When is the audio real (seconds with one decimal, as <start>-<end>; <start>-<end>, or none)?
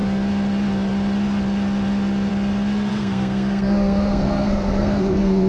0.0-2.9